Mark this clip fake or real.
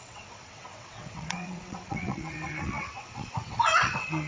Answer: fake